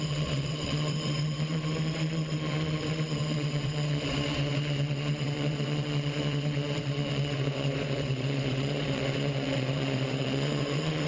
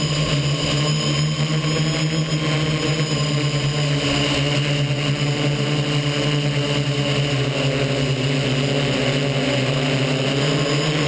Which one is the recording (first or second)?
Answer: second